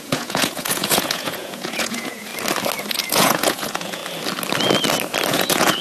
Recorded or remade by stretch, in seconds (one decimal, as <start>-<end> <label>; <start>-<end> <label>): 0.0-2.3 remade; 2.3-2.9 recorded; 2.9-4.0 remade; 4.0-5.3 recorded; 5.3-5.8 remade